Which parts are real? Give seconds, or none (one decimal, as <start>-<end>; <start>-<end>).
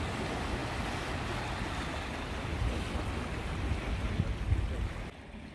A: 0.0-5.5